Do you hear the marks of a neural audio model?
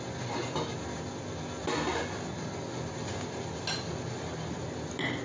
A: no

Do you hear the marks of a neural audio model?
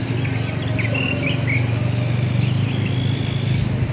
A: no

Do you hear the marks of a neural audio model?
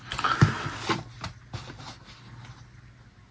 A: no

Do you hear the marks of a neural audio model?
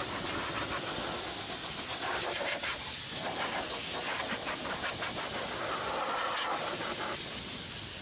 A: no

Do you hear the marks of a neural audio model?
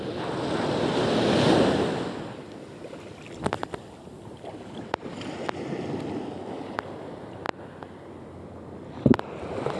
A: no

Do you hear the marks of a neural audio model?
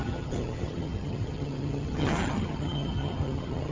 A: yes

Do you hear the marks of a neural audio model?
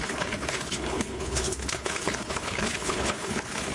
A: yes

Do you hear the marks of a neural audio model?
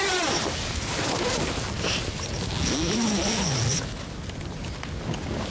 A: no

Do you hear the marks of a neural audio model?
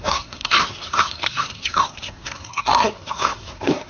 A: yes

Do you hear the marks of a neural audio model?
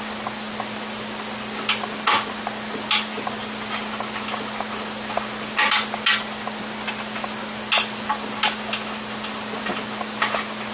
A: no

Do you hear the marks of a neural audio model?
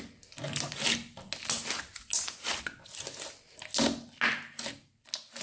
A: no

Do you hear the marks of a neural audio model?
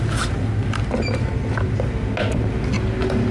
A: no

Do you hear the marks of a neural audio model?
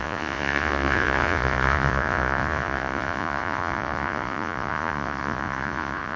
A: yes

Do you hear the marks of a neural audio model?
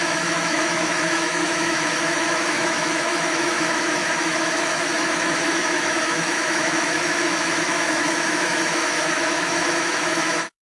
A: yes